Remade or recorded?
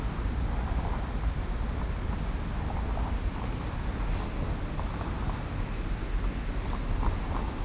recorded